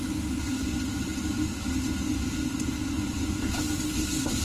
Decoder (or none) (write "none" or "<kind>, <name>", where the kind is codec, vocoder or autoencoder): none